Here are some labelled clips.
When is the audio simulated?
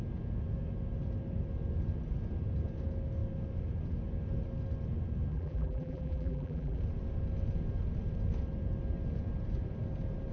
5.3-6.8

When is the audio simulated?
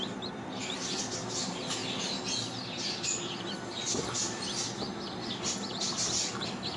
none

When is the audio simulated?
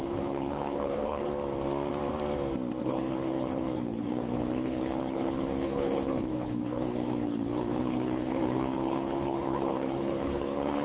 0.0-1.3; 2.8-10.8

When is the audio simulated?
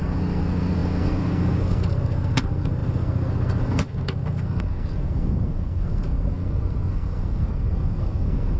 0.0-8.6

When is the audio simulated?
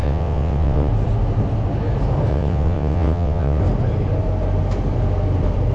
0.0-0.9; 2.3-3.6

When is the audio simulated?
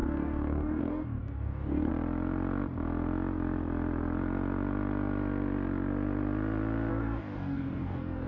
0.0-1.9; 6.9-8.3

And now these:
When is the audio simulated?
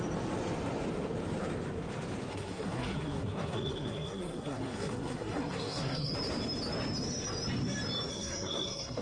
2.3-6.1; 8.1-9.0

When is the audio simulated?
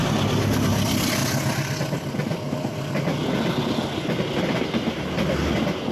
none